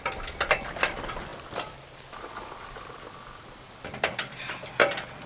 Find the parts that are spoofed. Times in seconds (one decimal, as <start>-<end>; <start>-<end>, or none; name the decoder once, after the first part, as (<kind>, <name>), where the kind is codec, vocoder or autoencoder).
1.3-4.5 (vocoder, BigVGAN v2)